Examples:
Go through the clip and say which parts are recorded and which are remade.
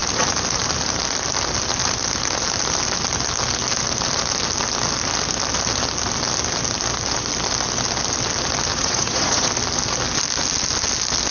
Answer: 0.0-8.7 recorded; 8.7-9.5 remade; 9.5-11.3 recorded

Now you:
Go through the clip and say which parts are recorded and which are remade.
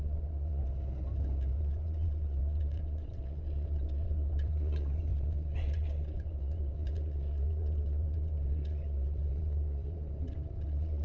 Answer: 0.0-0.6 remade; 0.6-1.6 recorded; 1.6-11.0 remade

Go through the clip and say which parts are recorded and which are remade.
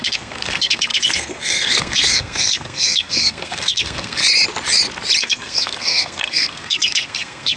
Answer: 0.0-4.2 remade; 4.2-5.2 recorded; 5.2-7.6 remade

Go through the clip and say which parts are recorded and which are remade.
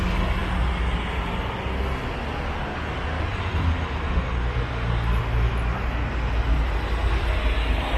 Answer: 0.0-8.0 recorded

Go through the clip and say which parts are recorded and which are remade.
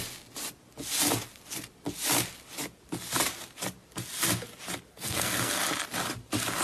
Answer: 0.0-4.9 recorded; 4.9-5.6 remade; 5.6-6.6 recorded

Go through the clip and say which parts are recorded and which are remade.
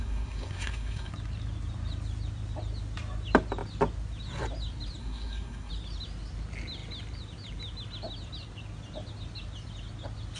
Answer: 0.0-1.1 remade; 1.1-5.0 recorded; 5.0-5.7 remade; 5.7-10.4 recorded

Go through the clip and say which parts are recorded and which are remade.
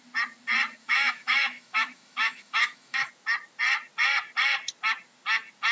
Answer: 0.0-0.8 recorded; 0.8-3.1 remade; 3.1-5.7 recorded